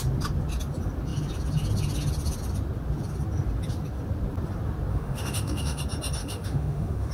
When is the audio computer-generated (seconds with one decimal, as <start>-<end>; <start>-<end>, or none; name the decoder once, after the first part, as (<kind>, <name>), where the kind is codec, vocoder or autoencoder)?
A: 4.9-5.8 (autoencoder, DAC-VAE); 6.2-7.1